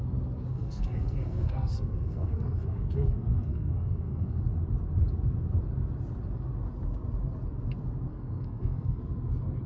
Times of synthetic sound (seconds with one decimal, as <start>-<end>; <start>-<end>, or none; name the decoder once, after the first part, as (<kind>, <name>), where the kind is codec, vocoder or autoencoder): 0.5-4.4 (codec, SNAC); 8.1-9.0